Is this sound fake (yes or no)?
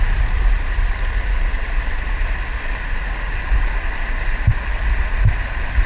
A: no